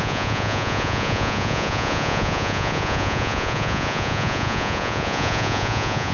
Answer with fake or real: fake